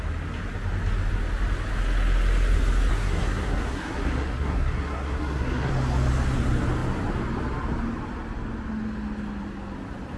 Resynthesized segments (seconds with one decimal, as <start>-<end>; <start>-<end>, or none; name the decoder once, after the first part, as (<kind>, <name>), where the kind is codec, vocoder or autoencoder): 2.9-5.7 (codec, SNAC)